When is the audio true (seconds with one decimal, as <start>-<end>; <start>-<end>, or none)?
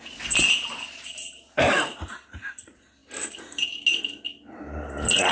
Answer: 0.0-5.3